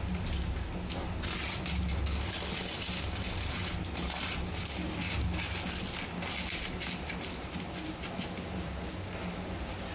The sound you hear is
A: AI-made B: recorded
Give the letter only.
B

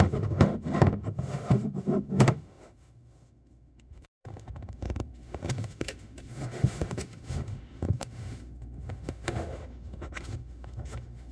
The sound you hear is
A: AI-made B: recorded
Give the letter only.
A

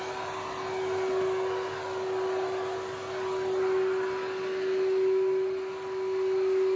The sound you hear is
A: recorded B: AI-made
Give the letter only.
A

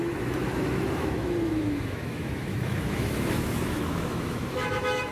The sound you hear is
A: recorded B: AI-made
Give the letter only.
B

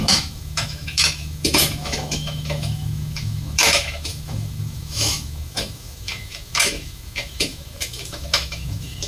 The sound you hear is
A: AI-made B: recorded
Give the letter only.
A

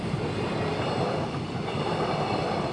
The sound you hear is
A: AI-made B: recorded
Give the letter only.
B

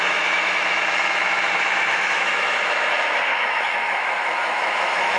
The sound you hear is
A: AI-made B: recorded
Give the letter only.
A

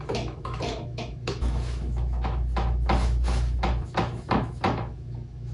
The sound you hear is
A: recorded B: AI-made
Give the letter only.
B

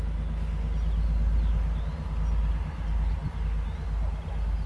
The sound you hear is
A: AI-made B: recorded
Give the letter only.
B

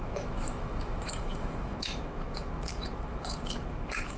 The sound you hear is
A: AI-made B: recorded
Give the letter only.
A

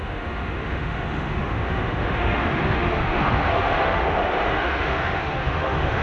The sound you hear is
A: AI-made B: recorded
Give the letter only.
A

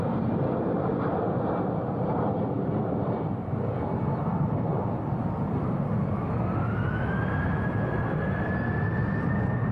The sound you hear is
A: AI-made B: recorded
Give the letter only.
B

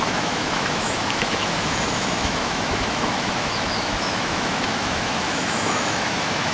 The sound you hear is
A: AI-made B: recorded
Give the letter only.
A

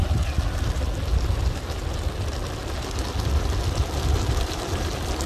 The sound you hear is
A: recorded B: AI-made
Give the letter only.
A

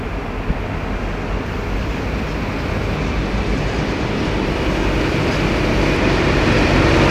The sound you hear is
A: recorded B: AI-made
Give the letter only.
A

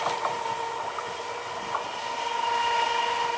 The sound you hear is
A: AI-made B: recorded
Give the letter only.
B